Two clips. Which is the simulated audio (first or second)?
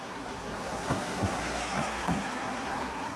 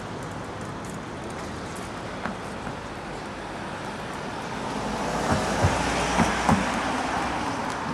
first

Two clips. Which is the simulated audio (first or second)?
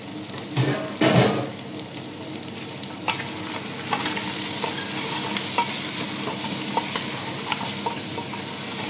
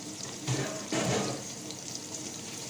second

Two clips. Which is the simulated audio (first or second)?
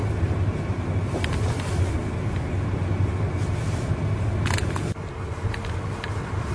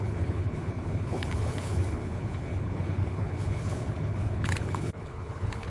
second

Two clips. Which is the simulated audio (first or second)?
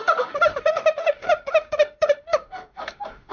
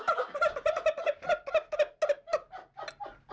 first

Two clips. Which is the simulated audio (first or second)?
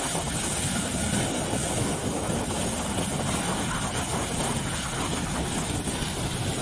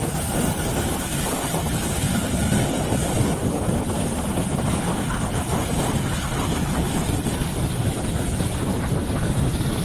second